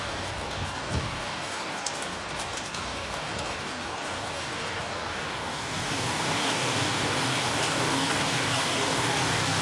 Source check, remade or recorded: remade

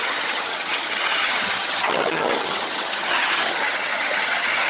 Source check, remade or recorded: remade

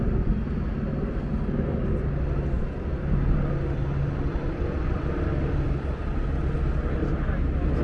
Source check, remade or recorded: recorded